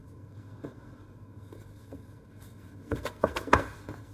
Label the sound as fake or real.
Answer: fake